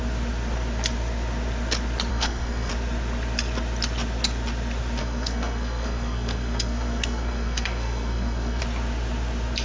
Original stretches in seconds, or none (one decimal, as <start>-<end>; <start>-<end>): 0.0-2.1; 2.7-5.0; 8.6-9.6